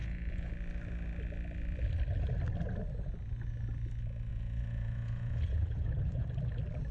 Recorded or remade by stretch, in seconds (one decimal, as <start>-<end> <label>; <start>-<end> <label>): 0.0-0.5 remade; 0.5-4.3 recorded; 4.3-6.3 remade; 6.3-6.9 recorded